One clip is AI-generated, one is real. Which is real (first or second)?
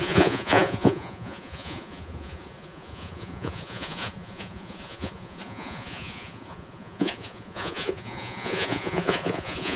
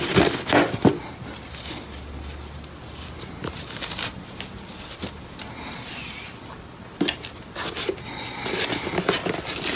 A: second